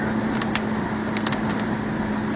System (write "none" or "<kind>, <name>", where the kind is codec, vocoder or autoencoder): none